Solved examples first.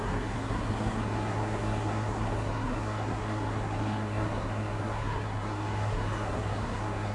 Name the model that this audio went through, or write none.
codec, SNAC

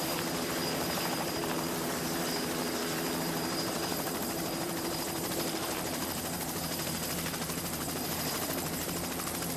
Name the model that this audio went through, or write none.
vocoder, BigVGAN v2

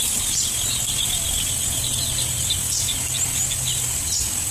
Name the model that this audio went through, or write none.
none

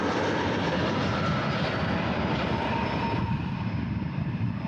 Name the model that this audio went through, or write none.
none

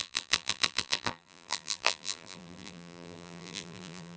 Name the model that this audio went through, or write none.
vocoder, BigVGAN v2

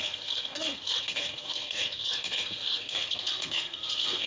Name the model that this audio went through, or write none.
codec, SNAC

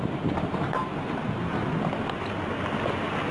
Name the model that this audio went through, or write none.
none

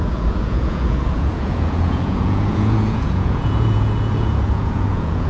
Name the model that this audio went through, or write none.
vocoder, Vocos